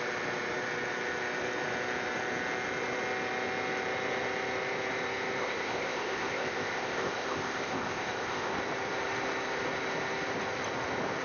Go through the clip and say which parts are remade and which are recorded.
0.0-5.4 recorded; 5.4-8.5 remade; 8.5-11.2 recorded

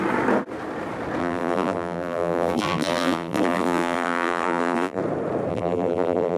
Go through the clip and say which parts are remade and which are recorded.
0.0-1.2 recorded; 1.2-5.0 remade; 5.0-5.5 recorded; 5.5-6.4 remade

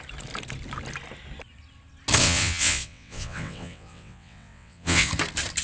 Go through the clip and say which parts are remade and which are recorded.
0.0-2.2 recorded; 2.2-5.1 remade; 5.1-5.6 recorded

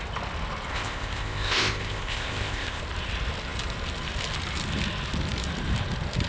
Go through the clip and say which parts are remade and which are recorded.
0.0-0.7 recorded; 0.7-2.8 remade; 2.8-6.3 recorded

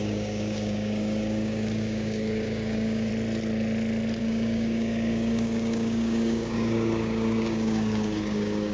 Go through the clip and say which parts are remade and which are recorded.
0.0-3.1 remade; 3.1-4.2 recorded; 4.2-8.7 remade